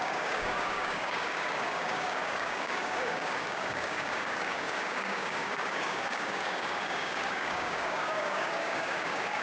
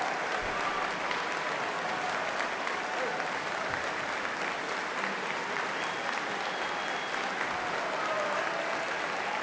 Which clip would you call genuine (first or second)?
second